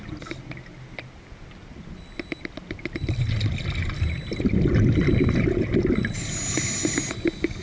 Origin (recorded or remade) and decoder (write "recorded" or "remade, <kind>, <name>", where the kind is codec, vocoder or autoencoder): recorded